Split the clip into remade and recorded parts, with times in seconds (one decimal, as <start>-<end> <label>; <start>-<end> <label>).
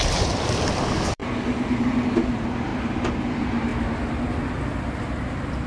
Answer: 0.0-1.2 remade; 1.2-1.8 recorded; 1.8-2.7 remade; 2.7-3.3 recorded; 3.3-3.7 remade; 3.7-5.7 recorded